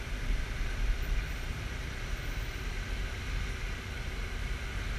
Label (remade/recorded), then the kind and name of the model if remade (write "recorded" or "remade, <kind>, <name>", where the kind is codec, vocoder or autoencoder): recorded